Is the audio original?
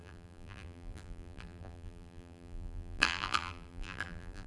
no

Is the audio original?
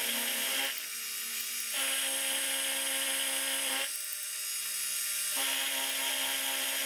yes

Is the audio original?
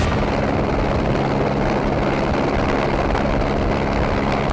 yes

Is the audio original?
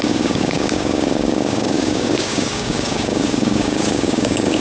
no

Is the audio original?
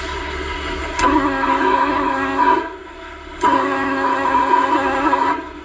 no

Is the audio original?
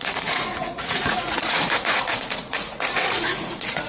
no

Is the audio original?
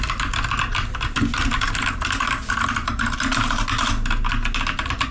yes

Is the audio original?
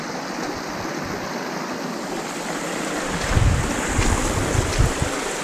yes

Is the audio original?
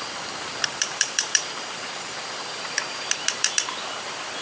no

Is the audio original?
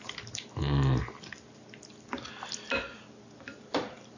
yes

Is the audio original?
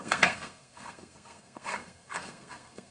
no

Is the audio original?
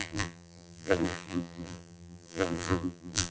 no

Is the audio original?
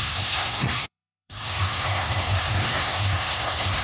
no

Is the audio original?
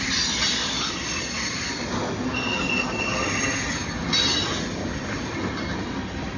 yes